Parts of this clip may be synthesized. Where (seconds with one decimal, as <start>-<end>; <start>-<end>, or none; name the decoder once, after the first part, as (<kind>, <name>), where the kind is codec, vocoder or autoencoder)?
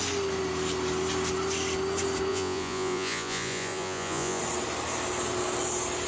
2.3-4.4 (vocoder, Vocos)